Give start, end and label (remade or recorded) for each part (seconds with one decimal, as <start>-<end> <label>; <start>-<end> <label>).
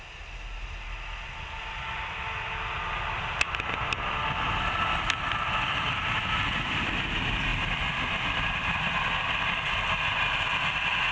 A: 0.0-11.1 recorded